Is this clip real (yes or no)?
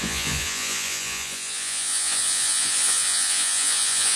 no